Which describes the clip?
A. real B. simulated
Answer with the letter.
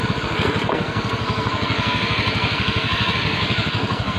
B